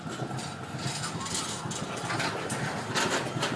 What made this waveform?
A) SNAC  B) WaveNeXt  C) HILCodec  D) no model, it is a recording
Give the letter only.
D